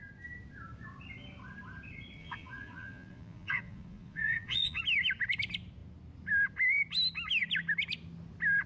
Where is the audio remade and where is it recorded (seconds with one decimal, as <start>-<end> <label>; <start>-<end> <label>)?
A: 0.0-2.2 recorded; 2.2-4.8 remade; 4.8-8.7 recorded